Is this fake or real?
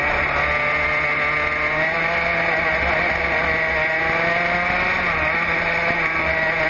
real